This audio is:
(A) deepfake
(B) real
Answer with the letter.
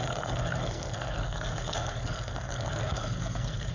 A